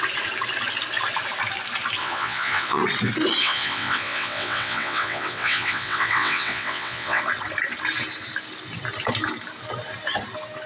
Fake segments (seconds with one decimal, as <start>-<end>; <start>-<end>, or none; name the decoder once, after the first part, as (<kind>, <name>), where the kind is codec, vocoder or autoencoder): 2.0-2.8 (vocoder, WaveNeXt); 3.4-7.2